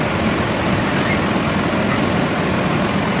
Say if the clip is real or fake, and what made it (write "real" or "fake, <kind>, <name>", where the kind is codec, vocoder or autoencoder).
real